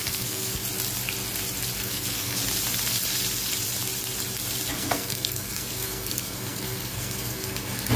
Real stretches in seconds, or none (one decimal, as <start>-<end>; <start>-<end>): 0.6-1.8; 2.4-4.7